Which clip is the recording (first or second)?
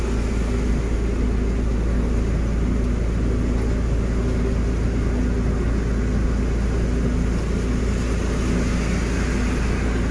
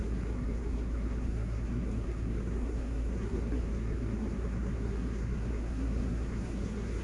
first